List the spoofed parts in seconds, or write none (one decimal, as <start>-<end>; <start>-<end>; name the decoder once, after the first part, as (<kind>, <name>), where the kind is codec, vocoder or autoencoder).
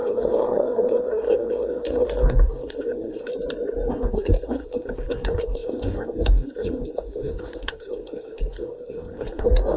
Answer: 0.0-3.3 (codec, SNAC); 3.9-9.8